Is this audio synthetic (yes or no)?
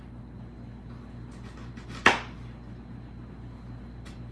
no